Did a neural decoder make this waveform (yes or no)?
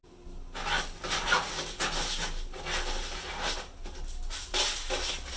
no